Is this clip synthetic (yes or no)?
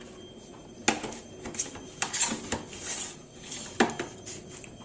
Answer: no